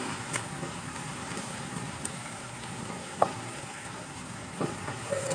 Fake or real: fake